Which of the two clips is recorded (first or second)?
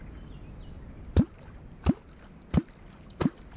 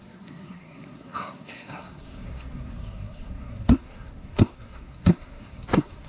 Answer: first